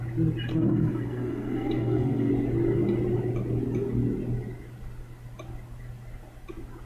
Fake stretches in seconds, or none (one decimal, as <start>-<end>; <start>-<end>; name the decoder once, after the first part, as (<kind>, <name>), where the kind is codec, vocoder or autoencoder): 0.5-2.3 (codec, SNAC)